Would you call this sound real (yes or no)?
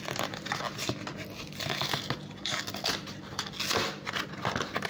yes